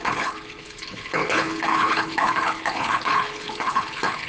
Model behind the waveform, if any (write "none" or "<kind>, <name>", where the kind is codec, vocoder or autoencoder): codec, HILCodec